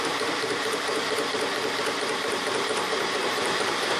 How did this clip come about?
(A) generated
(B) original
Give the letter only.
A